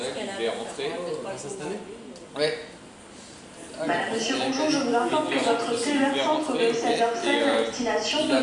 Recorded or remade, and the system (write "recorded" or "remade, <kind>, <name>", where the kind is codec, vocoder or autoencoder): recorded